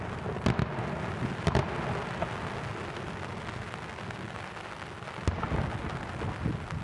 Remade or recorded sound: recorded